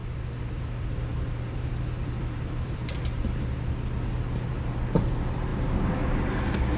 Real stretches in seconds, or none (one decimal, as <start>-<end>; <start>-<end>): 3.7-6.8